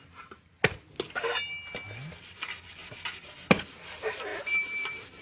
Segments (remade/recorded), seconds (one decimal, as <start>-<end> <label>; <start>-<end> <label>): 0.0-0.5 remade; 0.5-3.6 recorded; 3.6-5.2 remade